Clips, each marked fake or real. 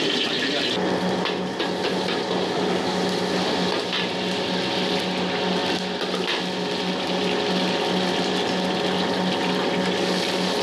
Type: real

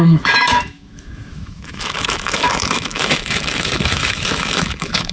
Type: fake